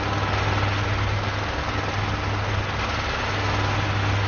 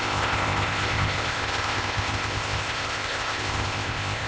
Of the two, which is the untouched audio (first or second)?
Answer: first